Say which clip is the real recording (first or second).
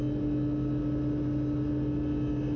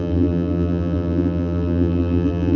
first